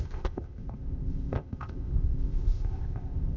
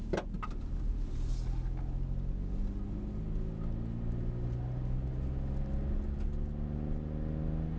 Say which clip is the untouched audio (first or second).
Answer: second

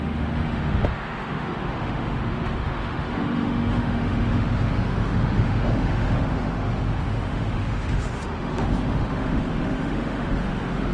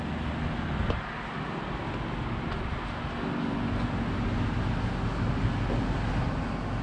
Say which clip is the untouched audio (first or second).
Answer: second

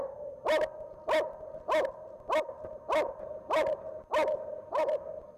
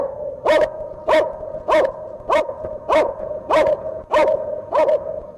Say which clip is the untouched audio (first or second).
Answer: first